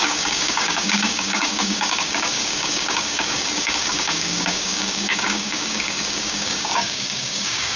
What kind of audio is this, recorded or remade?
remade